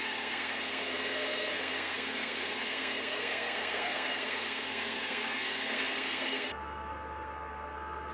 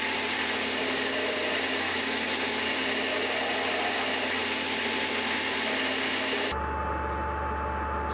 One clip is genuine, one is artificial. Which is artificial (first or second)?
first